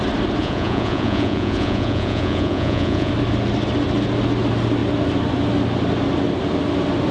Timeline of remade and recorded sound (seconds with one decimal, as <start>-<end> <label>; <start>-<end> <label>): 0.0-0.4 recorded; 0.4-3.1 remade; 3.1-7.1 recorded